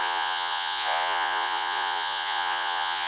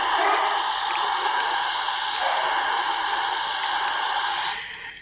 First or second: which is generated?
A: first